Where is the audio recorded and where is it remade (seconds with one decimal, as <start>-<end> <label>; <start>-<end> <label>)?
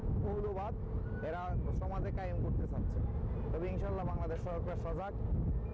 0.0-5.7 recorded